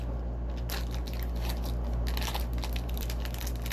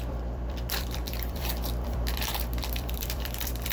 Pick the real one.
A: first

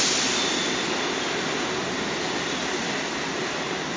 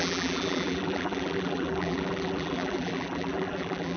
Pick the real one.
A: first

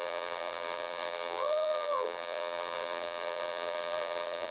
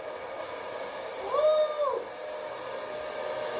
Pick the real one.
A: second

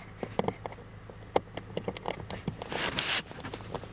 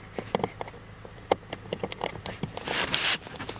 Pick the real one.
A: first